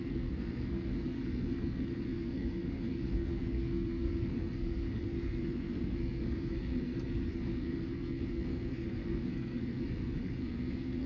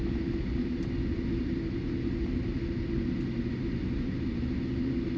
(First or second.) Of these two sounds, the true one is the second